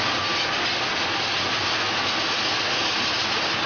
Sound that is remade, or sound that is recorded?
recorded